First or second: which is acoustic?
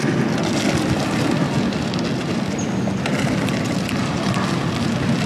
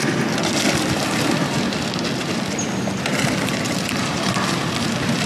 first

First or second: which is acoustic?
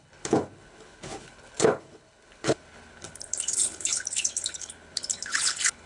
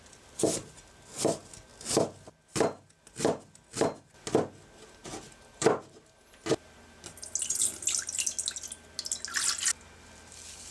second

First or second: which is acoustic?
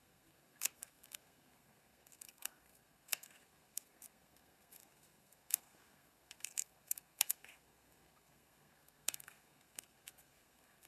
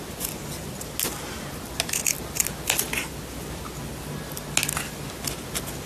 second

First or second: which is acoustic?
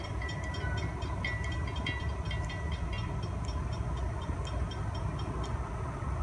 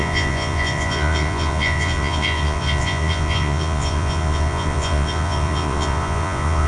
first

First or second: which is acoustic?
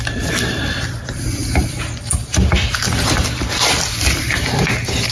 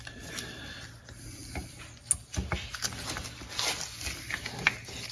second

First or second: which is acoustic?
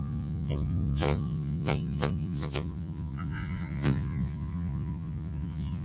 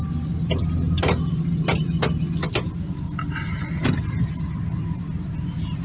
second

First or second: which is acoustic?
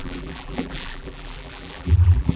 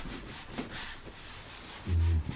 second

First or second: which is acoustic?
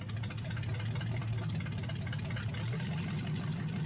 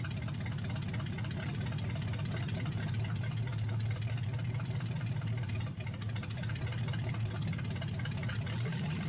first